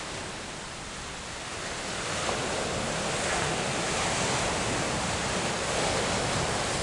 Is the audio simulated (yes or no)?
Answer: no